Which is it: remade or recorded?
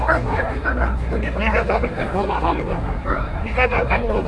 remade